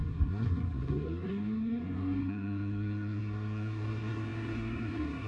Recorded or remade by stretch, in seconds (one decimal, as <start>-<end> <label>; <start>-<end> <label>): 0.0-5.3 remade